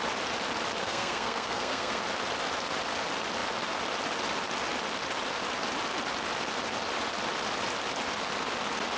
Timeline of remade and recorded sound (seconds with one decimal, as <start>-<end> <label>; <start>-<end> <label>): 0.0-0.8 recorded; 0.8-2.0 remade; 2.0-9.0 recorded